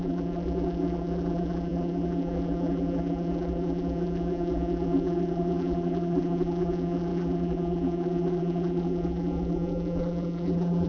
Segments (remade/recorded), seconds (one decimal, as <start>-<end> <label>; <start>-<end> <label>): 0.0-10.9 remade

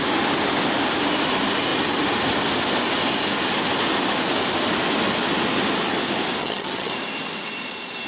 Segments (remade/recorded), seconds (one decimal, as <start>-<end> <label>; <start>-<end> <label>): 0.0-6.4 recorded; 6.4-6.9 remade; 6.9-8.1 recorded

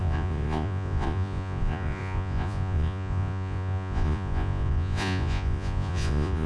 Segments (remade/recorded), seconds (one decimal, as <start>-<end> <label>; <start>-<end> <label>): 0.0-6.5 remade

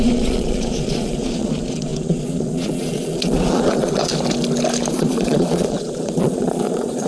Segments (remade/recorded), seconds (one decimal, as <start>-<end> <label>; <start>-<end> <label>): 0.0-4.1 remade; 4.1-4.9 recorded; 4.9-7.1 remade

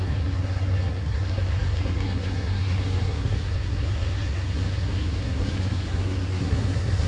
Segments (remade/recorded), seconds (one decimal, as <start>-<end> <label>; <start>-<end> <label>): 0.0-7.1 remade